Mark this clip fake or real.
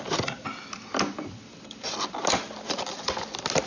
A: real